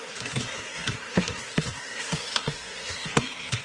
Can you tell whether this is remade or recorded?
remade